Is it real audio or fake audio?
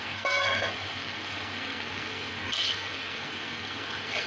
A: fake